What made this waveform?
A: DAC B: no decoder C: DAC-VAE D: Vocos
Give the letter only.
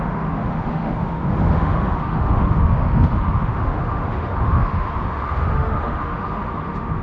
C